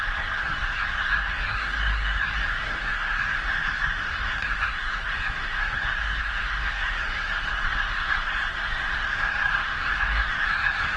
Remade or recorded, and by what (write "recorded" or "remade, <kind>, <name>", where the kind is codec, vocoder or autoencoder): remade, codec, SNAC